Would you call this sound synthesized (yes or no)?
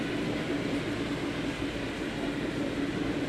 no